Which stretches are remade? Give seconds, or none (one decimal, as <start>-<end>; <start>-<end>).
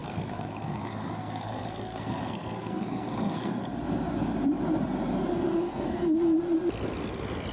0.0-3.6; 5.3-6.2